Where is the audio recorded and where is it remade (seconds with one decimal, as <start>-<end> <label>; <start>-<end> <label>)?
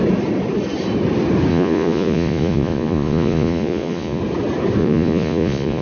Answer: 0.0-1.5 recorded; 1.5-4.2 remade; 4.2-4.8 recorded; 4.8-5.8 remade